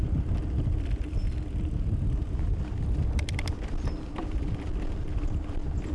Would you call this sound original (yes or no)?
yes